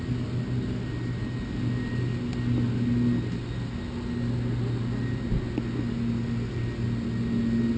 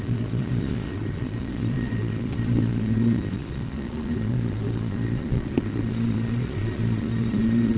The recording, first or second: first